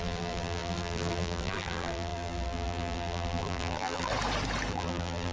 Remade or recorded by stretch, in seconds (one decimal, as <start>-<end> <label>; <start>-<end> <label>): 0.0-4.1 remade; 4.1-4.7 recorded; 4.7-5.3 remade